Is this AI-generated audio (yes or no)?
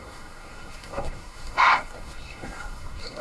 yes